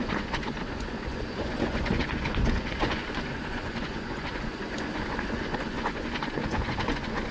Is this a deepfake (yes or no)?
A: yes